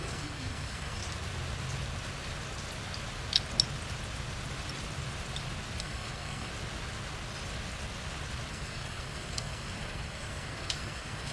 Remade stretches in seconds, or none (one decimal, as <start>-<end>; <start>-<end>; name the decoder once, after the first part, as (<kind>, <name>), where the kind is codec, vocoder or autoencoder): 0.0-1.0 (codec, SNAC); 5.8-6.5; 8.5-11.3

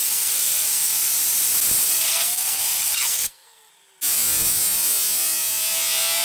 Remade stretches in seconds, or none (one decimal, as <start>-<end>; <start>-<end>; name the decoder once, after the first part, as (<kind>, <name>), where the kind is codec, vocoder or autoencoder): 0.0-1.1 (codec, SNAC); 2.1-3.7

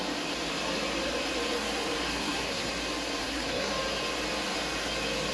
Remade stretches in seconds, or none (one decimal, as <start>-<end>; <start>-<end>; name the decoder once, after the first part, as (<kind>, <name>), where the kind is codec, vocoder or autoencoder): 2.1-2.7 (codec, SNAC); 3.2-3.7

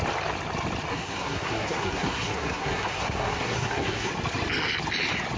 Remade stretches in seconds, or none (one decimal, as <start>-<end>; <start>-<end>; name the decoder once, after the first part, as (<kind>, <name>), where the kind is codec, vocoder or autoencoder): 0.9-4.1 (codec, SNAC)

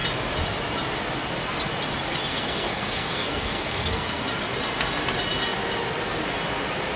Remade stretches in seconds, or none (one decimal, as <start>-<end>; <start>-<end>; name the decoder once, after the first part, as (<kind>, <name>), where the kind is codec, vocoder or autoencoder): 2.3-4.2 (codec, SNAC)

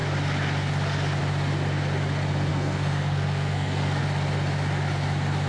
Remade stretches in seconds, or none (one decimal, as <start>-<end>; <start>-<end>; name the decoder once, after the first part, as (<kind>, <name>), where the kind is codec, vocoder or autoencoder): 2.5-4.0 (codec, SNAC)

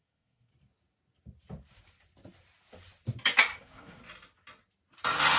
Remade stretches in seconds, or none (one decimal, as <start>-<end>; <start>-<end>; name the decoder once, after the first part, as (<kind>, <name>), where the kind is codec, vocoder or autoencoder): 0.0-0.5 (codec, SNAC); 3.6-4.0

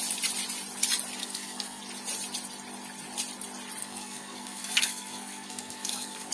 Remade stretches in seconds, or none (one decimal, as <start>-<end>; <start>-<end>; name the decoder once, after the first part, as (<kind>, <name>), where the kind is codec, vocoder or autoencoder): 1.2-1.8 (codec, SNAC); 3.8-6.3